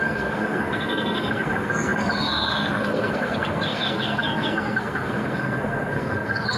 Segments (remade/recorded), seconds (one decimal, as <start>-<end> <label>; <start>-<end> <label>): 0.0-6.6 remade